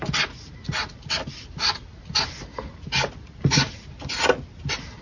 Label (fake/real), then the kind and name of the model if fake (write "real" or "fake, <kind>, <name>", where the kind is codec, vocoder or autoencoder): real